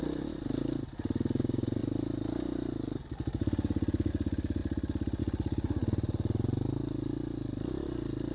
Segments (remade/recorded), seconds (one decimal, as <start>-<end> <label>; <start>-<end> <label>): 0.0-8.3 recorded